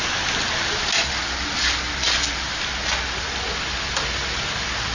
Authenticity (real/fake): real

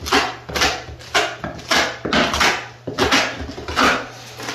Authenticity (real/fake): real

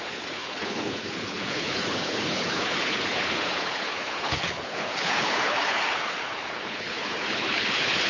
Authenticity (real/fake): fake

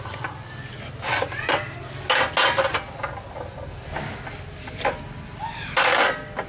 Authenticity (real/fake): real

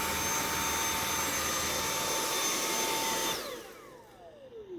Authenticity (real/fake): real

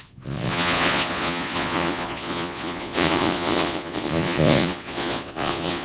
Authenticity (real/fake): fake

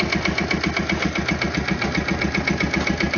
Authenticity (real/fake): real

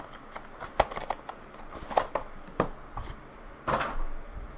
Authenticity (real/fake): real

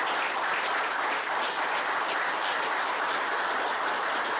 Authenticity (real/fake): real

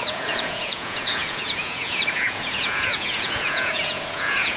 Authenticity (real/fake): fake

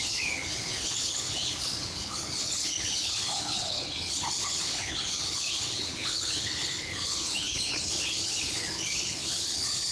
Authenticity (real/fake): fake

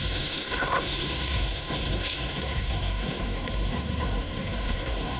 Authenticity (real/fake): fake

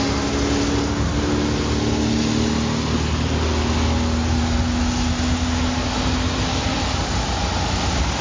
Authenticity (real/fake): real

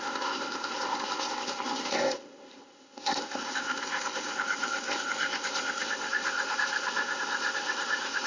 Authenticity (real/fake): fake